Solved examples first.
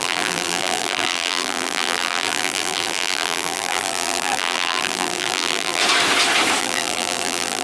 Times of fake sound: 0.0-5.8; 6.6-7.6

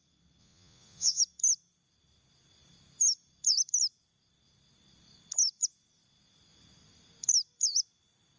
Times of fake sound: 0.4-1.2

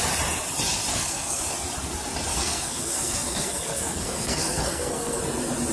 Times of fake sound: 0.9-1.4; 2.3-5.2

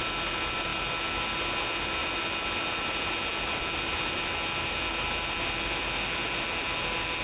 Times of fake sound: none

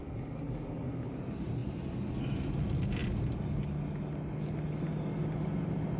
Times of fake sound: 0.0-1.1

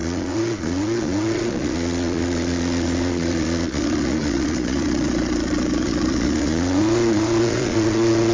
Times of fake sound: 0.0-8.3